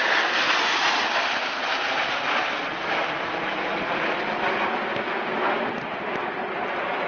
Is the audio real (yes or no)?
yes